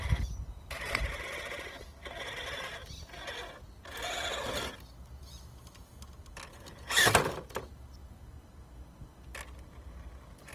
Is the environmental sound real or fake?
real